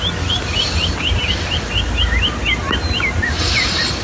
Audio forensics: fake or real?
real